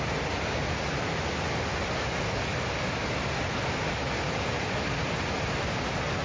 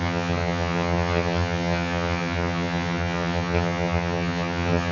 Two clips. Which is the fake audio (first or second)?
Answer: second